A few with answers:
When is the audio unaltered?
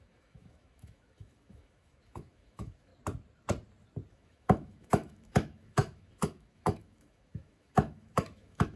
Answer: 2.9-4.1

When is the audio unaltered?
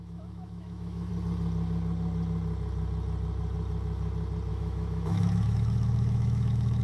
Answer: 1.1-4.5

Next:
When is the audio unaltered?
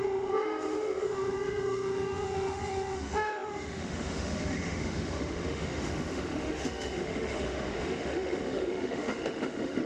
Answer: none